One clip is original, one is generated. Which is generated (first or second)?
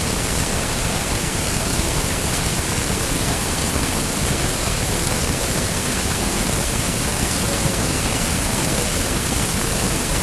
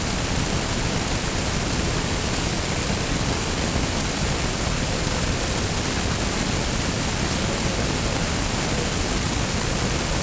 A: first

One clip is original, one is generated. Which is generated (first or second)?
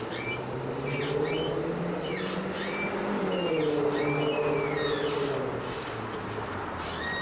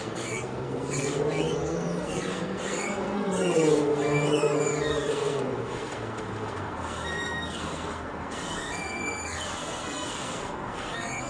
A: second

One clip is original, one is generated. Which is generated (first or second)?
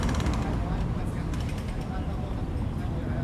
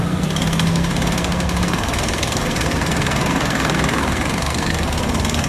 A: second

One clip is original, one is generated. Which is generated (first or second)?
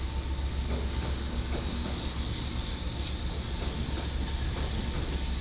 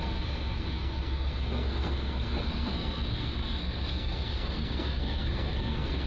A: second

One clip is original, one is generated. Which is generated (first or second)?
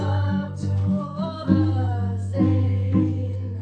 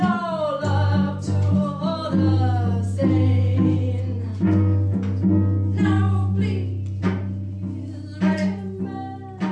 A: first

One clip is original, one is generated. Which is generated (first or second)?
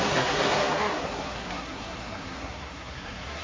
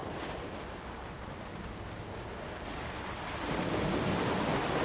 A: first